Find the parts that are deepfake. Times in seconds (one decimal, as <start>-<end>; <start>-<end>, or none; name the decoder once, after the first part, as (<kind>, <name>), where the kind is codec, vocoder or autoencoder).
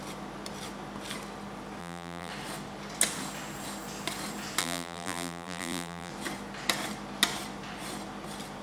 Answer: 1.8-2.3 (vocoder, BigVGAN v2); 4.6-6.1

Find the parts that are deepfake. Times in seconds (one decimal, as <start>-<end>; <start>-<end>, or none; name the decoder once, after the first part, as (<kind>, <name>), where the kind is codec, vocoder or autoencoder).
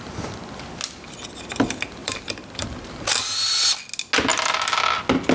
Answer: 2.0-3.0 (vocoder, BigVGAN v2)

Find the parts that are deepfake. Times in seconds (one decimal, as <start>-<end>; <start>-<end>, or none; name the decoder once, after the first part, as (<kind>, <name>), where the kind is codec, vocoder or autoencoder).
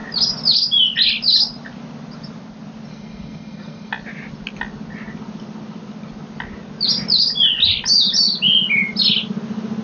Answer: 2.9-3.9 (codec, SNAC)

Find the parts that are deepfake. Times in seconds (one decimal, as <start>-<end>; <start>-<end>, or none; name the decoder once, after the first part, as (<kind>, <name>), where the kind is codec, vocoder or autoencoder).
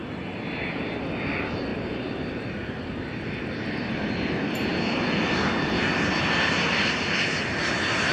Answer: none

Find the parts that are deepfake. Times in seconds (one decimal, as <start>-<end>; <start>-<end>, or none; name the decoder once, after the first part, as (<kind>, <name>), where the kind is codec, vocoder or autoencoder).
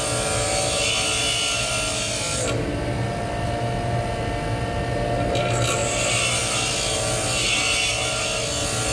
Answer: none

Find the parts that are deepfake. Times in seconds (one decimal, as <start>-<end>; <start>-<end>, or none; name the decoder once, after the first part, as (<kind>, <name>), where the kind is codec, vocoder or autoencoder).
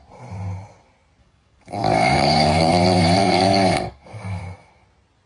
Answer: 1.2-2.7 (codec, DAC); 3.2-4.4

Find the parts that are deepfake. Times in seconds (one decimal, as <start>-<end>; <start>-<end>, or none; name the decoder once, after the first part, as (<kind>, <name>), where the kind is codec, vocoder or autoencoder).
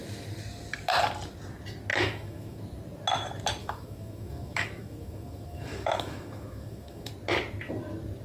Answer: 1.9-2.6 (autoencoder, DAC-VAE); 3.6-7.1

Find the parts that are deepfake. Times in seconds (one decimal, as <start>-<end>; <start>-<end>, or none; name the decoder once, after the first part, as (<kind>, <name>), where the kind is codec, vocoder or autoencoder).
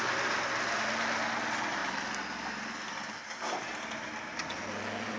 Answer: none